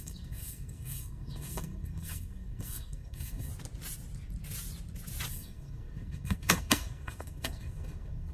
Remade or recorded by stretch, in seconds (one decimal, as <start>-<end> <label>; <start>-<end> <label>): 0.0-3.5 remade; 3.5-5.3 recorded; 5.3-8.3 remade